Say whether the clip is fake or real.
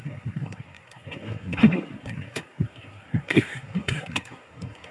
fake